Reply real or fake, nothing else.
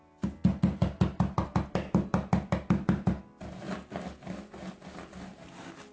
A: real